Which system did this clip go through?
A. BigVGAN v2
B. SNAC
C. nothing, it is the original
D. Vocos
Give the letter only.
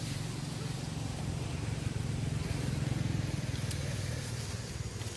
C